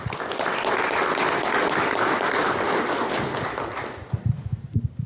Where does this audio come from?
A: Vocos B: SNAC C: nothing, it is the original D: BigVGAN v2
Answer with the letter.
C